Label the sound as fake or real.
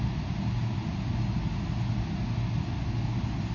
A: real